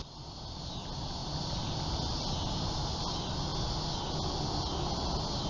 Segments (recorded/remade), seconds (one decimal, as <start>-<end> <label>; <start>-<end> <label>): 0.0-5.5 recorded